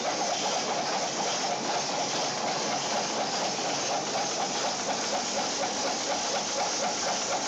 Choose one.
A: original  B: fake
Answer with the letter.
A